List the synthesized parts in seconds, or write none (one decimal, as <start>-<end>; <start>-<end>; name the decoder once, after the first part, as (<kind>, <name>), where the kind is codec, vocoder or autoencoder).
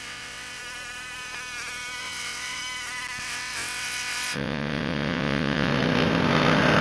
0.0-0.6 (vocoder, WaveNeXt); 2.0-2.6; 3.2-5.7